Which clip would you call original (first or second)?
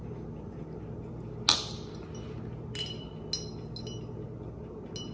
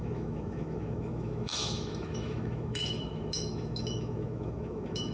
first